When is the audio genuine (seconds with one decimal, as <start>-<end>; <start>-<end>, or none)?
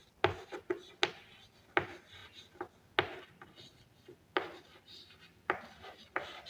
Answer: 0.0-6.5